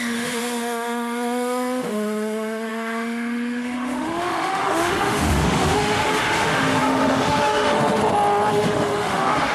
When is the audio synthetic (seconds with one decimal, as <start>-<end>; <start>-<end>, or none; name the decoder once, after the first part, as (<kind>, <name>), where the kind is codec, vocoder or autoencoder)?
0.0-8.0 (autoencoder, DAC-VAE); 8.5-9.5